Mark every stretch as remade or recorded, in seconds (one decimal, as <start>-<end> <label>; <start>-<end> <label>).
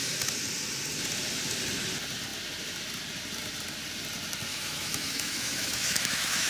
0.0-4.5 recorded; 4.5-6.5 remade